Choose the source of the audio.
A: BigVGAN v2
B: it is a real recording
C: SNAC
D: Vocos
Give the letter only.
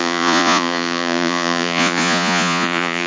D